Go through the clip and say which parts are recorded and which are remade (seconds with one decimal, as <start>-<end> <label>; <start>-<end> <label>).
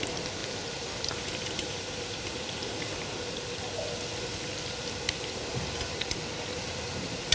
0.0-0.4 remade; 0.4-1.0 recorded; 1.0-2.6 remade; 2.6-6.6 recorded; 6.6-7.3 remade